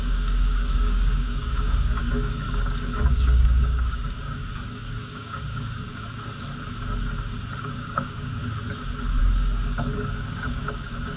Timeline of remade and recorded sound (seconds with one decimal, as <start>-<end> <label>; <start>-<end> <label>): 0.0-6.0 remade; 6.0-7.6 recorded; 7.6-8.4 remade; 8.4-9.2 recorded; 9.2-11.2 remade